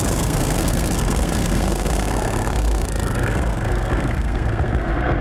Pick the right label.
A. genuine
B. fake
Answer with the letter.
B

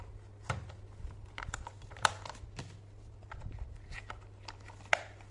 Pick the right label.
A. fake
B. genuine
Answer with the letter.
B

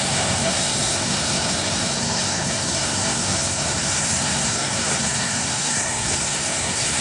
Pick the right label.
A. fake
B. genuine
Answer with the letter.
A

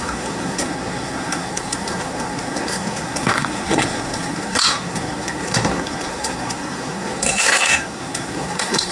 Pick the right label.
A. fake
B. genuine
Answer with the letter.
A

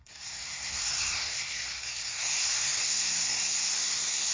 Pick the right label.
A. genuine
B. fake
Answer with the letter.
B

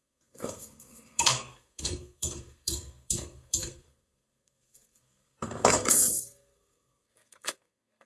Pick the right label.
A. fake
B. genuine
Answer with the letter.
A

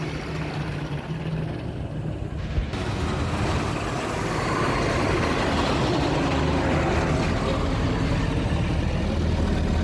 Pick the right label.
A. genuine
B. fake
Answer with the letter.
A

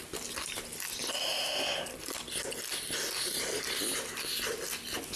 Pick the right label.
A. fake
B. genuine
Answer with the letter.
B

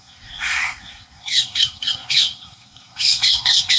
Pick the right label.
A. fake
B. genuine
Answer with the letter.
A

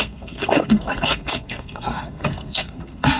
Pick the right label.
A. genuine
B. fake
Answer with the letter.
B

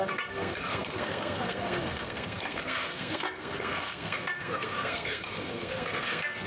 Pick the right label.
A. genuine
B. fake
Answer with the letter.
B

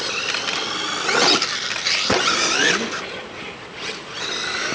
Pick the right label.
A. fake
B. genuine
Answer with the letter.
B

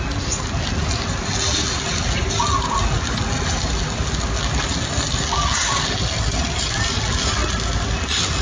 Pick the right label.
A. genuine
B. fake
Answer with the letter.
A